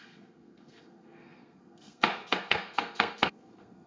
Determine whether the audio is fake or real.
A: fake